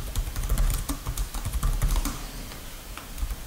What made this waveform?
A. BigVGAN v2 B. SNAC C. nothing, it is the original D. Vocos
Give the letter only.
C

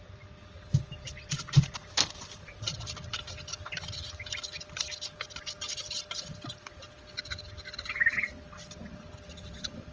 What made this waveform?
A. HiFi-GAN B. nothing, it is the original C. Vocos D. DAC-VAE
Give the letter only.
B